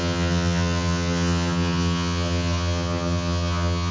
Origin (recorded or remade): remade